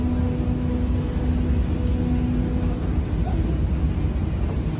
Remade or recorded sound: recorded